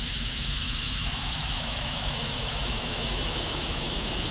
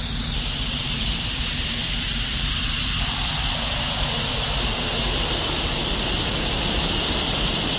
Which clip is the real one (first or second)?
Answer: second